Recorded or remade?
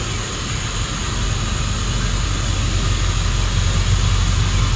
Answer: recorded